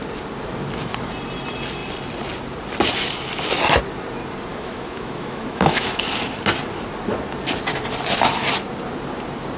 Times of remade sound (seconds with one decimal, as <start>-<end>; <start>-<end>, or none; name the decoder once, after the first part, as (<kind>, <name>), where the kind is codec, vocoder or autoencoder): 4.5-6.0 (autoencoder, DAC-VAE)